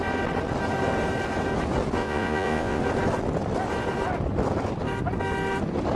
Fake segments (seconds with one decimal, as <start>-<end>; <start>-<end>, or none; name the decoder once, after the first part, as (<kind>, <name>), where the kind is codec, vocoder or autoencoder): 2.0-2.8 (vocoder, Vocos)